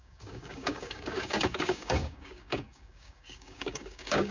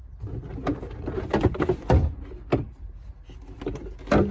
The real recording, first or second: second